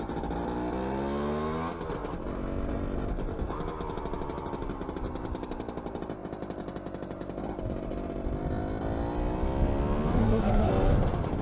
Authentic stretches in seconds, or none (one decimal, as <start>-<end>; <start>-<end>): 0.0-10.2; 10.7-11.4